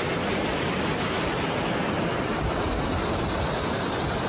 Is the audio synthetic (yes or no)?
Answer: no